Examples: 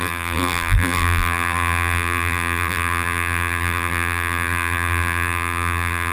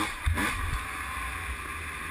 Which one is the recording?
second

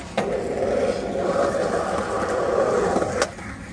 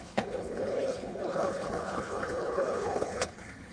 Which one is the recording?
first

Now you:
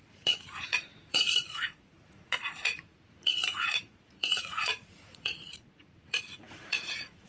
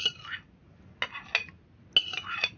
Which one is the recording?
second